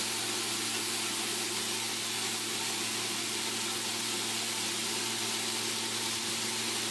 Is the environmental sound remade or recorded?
recorded